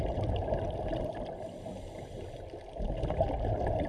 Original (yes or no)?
no